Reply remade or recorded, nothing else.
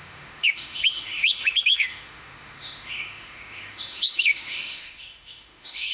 remade